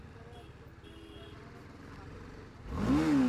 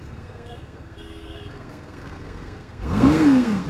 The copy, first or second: second